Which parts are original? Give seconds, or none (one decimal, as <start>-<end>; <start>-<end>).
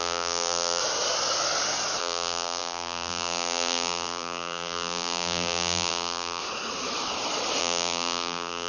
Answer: 0.8-2.0; 6.4-7.6